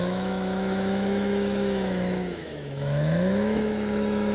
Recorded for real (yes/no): no